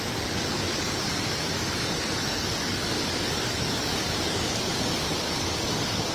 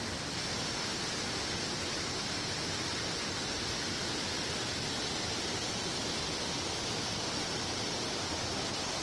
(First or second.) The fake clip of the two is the first